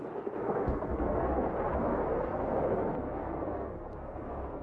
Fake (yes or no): yes